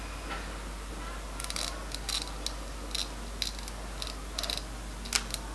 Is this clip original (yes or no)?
yes